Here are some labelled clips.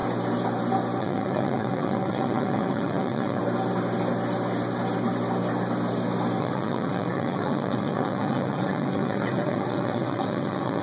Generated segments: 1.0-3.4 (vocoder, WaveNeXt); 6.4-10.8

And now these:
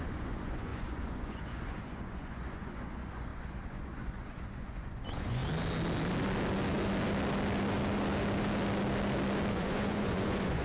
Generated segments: 0.0-5.4 (vocoder, Vocos); 9.5-10.6

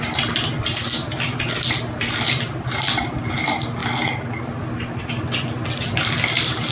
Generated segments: none

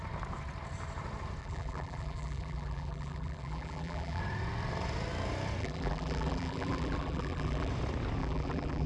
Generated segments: 1.4-4.2 (vocoder, BigVGAN v2); 5.6-7.7; 8.2-8.9

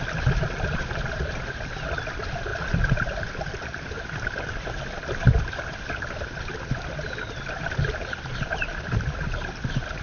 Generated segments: none

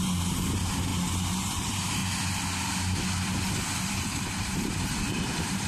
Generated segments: 0.0-0.9 (vocoder, BigVGAN v2); 1.5-2.0; 3.9-5.7

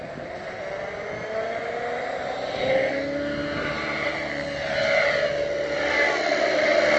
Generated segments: none